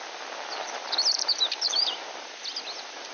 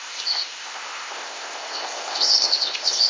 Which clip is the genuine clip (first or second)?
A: first